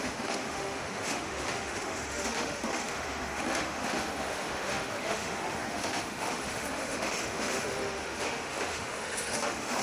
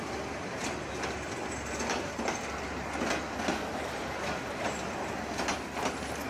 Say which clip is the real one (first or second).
second